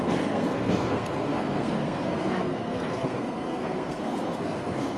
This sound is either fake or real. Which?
fake